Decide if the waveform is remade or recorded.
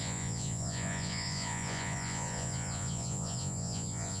remade